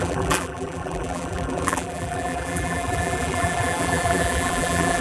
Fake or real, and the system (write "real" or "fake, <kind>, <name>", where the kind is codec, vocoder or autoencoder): fake, vocoder, BigVGAN v2